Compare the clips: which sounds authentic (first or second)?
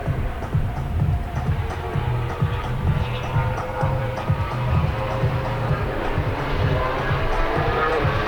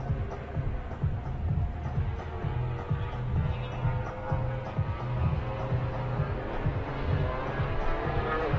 second